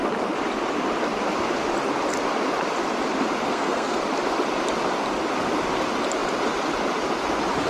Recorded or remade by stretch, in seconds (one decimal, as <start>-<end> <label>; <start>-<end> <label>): 0.0-3.4 recorded; 3.4-4.0 remade; 4.0-7.7 recorded